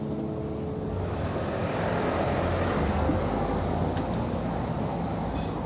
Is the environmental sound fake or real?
real